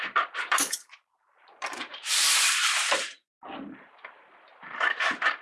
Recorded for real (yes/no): no